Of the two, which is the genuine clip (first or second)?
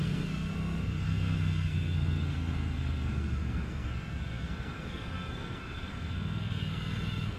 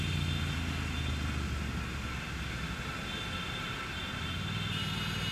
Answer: second